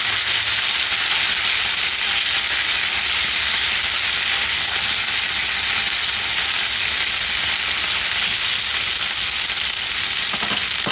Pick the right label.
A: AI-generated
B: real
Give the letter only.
B